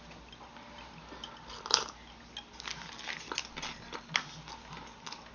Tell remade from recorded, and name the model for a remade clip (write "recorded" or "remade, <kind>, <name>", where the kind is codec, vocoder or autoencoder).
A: recorded